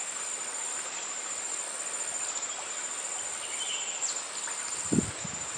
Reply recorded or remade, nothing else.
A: recorded